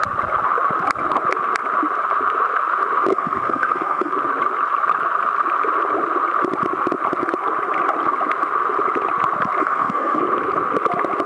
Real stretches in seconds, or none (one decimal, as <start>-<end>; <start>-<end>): 0.0-3.1; 4.1-9.6; 10.2-11.3